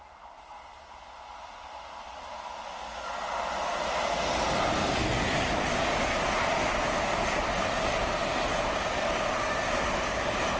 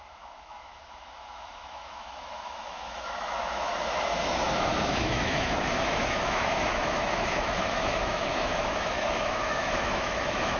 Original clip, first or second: first